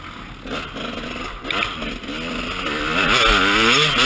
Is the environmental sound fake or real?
real